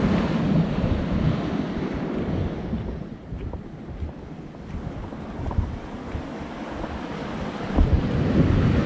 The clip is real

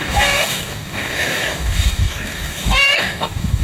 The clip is fake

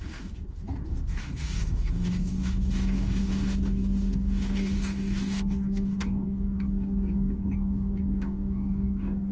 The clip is fake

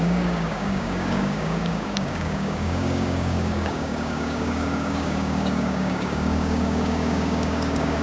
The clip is fake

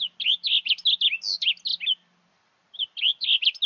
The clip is real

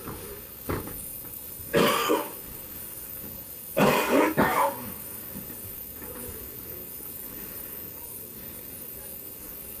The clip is fake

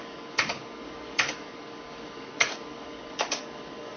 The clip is fake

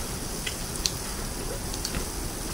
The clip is real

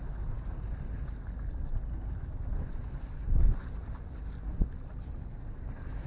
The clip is real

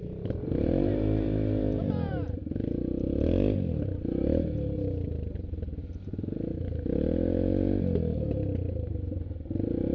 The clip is real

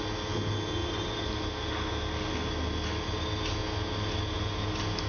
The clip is real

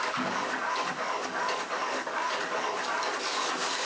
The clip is fake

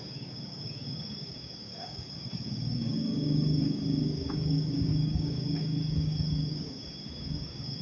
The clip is fake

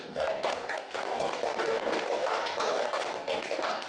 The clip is fake